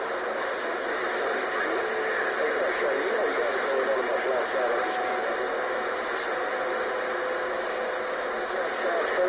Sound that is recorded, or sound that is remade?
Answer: recorded